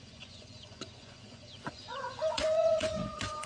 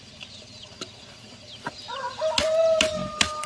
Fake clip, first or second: first